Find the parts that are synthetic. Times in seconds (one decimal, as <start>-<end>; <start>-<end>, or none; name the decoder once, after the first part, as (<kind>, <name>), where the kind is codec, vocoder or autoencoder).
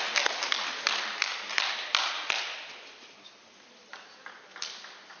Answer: none